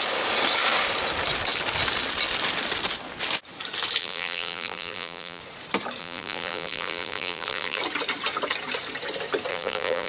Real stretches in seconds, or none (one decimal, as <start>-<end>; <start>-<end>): 0.0-4.0; 5.4-6.0; 7.8-9.5